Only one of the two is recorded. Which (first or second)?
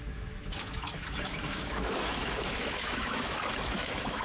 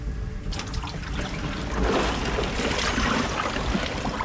second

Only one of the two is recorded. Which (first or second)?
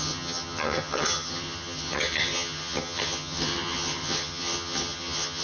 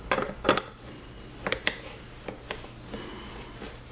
second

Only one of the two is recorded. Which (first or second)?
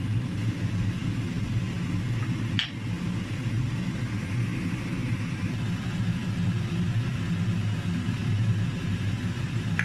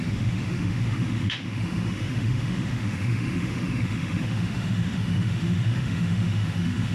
first